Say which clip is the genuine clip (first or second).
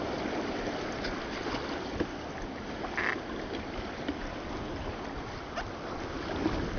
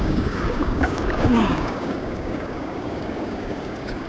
first